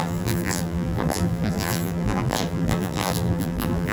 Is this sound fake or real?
fake